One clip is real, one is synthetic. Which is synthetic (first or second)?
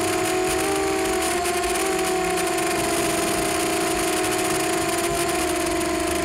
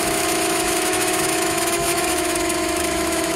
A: second